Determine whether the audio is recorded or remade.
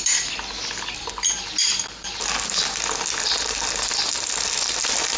recorded